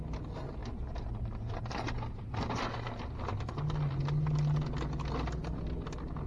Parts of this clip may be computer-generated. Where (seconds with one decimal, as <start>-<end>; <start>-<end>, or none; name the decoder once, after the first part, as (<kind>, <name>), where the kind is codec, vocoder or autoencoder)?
0.6-2.6 (vocoder, BigVGAN v2)